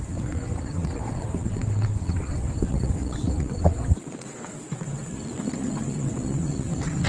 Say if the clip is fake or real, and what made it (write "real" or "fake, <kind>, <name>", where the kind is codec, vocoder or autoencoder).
fake, vocoder, WaveNeXt